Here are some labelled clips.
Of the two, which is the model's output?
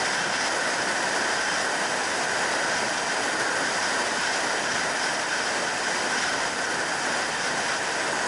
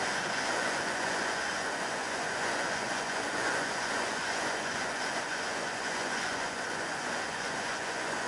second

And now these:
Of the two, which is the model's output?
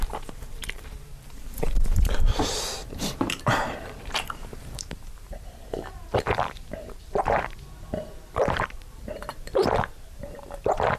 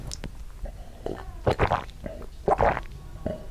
first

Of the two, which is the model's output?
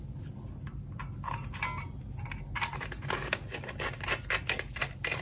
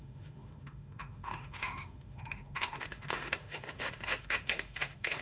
second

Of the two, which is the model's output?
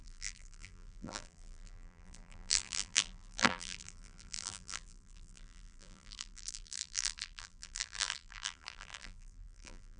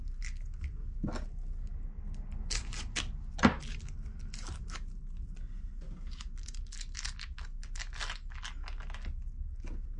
first